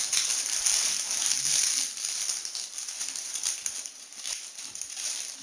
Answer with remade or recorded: remade